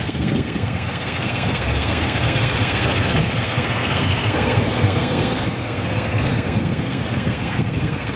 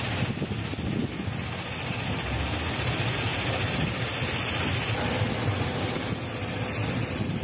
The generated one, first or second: first